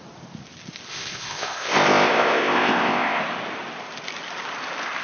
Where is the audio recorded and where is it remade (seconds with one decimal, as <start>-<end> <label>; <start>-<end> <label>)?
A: 0.0-0.9 recorded; 0.9-3.2 remade; 3.2-5.0 recorded